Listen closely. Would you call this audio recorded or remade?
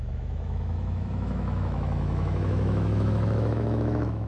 remade